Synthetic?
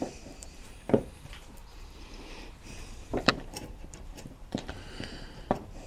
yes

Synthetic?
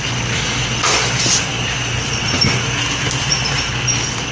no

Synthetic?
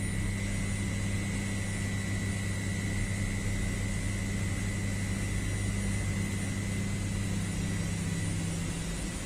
no